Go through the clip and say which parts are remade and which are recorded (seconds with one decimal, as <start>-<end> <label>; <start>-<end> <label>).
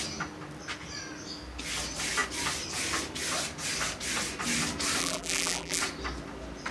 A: 0.0-5.0 recorded; 5.0-5.8 remade; 5.8-6.7 recorded